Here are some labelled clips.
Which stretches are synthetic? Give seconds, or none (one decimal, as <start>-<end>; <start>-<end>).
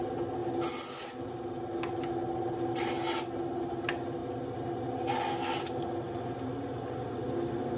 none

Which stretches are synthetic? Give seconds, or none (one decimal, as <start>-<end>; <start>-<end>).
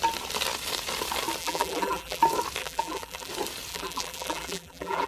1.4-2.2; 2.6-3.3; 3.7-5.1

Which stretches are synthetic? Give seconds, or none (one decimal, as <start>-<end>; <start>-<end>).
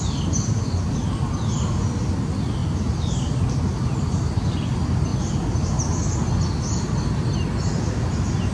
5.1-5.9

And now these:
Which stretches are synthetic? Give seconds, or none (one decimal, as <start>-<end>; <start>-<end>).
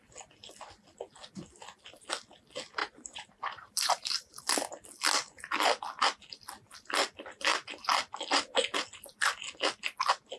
2.8-4.4